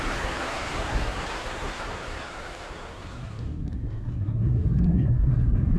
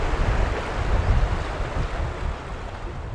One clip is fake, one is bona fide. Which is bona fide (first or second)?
second